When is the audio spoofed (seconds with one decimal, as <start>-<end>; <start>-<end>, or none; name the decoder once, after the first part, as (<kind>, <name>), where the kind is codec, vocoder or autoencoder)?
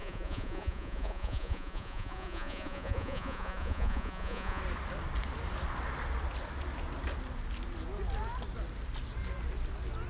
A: 0.0-4.6 (vocoder, Vocos)